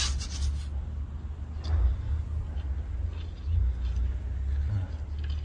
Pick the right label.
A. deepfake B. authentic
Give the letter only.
B